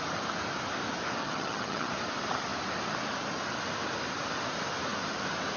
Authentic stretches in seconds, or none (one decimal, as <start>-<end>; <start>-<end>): 0.0-1.2; 1.9-5.6